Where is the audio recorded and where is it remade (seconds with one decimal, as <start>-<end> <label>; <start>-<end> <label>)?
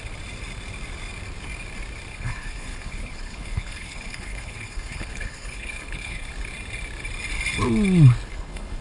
0.0-2.1 recorded; 2.1-6.3 remade; 6.3-8.3 recorded; 8.3-8.8 remade